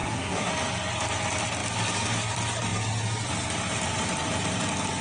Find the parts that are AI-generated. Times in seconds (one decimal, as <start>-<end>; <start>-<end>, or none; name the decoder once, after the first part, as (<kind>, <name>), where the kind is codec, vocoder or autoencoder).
0.0-0.5 (codec, SNAC)